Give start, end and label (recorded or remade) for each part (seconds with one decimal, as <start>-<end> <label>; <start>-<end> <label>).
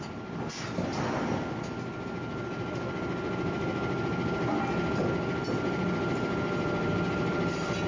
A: 0.0-7.9 recorded